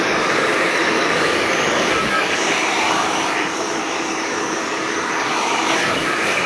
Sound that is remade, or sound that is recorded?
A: remade